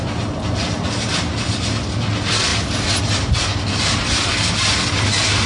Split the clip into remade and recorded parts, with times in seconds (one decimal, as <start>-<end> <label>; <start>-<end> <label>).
0.0-5.5 recorded